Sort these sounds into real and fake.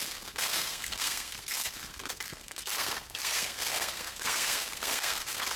fake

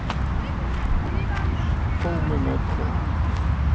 real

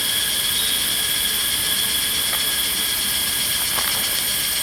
real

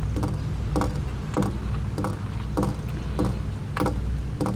real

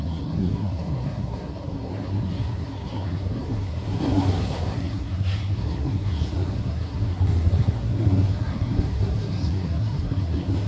fake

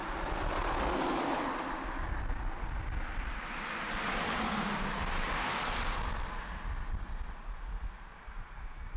real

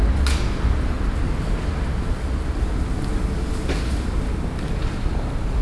real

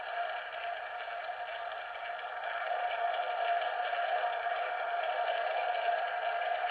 real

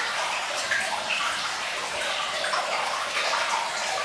real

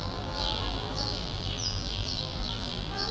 fake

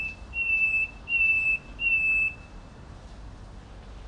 real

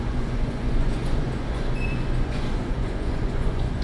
fake